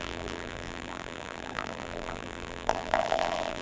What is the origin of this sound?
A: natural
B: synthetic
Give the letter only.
B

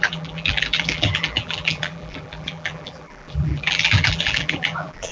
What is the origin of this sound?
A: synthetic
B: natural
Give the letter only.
A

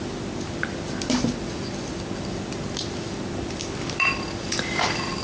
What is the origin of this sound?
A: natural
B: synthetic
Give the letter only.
B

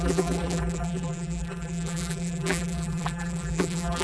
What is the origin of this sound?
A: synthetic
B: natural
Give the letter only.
A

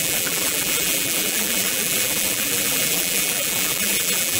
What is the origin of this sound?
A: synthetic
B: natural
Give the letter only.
A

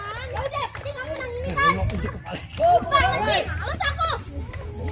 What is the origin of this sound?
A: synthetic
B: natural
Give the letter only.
B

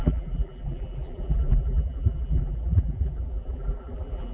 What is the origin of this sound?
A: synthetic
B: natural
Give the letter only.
A